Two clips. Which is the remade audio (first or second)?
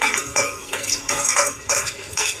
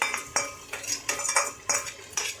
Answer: first